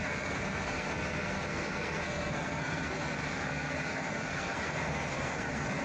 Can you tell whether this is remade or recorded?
remade